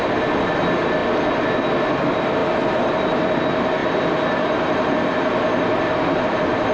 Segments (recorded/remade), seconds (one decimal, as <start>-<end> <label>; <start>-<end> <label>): 0.0-6.7 recorded